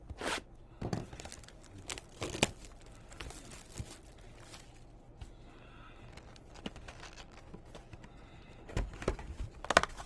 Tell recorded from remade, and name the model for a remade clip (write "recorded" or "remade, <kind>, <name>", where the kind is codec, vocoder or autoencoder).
recorded